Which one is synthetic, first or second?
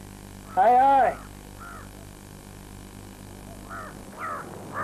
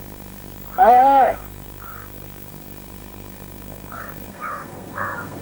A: second